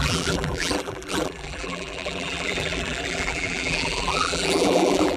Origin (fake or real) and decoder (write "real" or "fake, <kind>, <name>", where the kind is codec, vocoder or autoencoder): fake, vocoder, BigVGAN v2